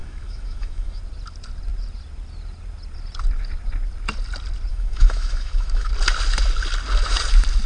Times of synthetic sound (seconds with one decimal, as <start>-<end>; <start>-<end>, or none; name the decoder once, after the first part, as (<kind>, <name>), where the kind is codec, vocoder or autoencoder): 0.0-1.0 (autoencoder, DAC-VAE); 4.7-5.9